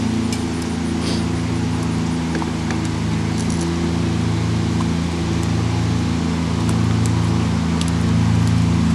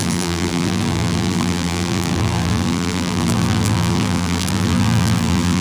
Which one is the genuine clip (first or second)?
first